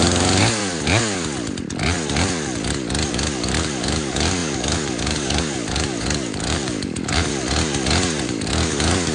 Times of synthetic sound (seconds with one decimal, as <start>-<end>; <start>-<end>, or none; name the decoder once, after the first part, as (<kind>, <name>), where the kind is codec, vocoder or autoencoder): 0.0-0.6 (codec, DAC); 3.1-7.3; 8.2-9.1